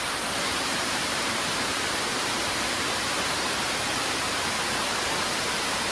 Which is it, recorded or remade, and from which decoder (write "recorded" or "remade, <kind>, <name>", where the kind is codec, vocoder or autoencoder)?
remade, vocoder, BigVGAN v2